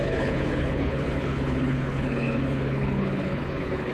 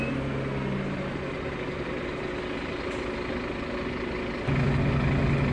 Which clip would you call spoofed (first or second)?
first